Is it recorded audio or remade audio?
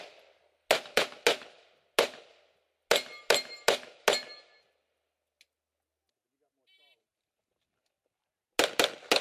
recorded